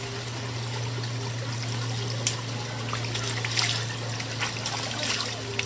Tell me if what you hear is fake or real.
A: real